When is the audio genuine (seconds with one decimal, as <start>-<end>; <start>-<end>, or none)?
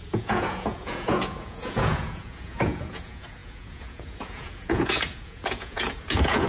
none